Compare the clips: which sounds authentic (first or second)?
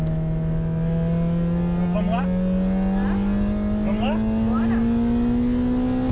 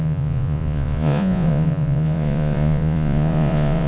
first